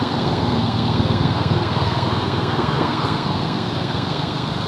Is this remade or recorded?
remade